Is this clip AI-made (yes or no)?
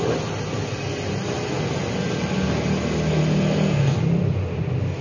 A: no